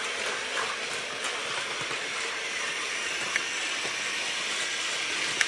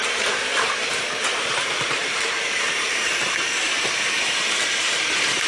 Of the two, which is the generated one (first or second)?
second